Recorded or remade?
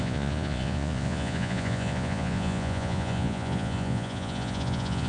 remade